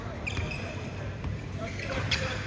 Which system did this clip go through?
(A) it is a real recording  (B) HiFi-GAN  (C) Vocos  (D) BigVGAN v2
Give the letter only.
D